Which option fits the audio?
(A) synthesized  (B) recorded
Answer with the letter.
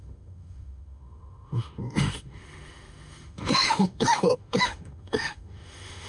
A